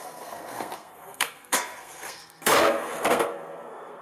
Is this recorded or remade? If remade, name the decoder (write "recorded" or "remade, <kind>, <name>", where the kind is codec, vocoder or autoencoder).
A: remade, codec, SNAC